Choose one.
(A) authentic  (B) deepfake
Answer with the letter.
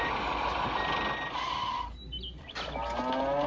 A